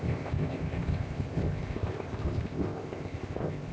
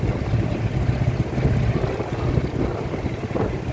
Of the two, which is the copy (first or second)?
first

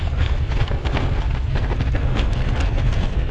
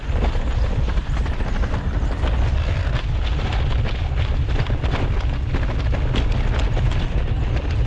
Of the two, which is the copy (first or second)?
first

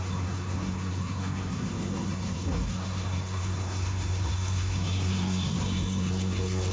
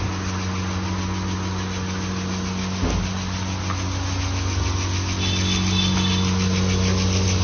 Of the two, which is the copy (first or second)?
first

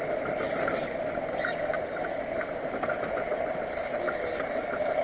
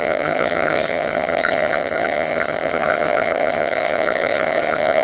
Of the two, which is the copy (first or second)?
second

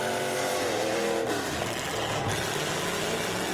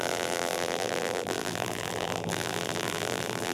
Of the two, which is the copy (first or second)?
second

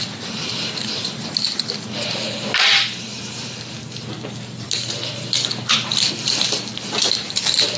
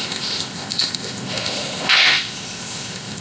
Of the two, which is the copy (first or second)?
second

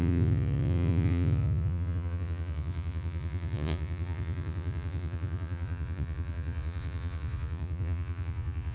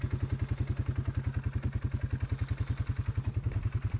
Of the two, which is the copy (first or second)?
first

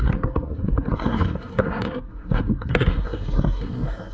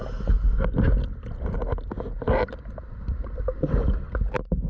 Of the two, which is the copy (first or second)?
first